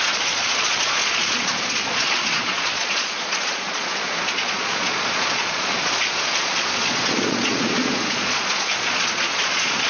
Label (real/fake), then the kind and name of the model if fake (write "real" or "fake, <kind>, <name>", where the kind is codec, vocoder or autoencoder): fake, vocoder, Vocos